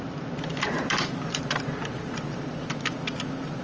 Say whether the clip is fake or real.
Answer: real